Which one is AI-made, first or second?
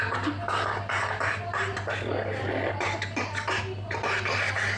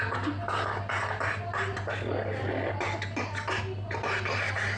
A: first